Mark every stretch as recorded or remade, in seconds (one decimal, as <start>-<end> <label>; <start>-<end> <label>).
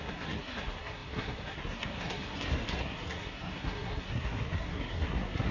0.0-5.5 remade